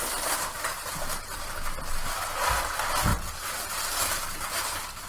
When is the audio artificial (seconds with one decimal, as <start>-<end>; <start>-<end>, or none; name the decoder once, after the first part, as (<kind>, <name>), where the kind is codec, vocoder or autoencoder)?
none